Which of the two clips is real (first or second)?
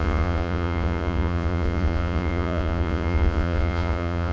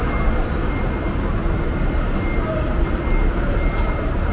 second